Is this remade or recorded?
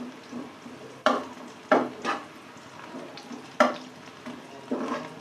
remade